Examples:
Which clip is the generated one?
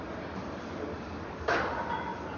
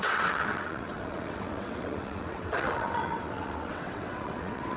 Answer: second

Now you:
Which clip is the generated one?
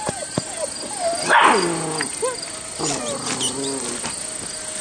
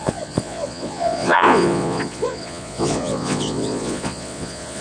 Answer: second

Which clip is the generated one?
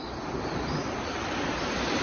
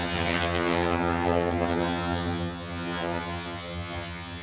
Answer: second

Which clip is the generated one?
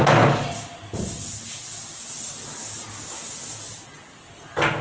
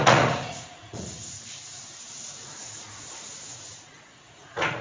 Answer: second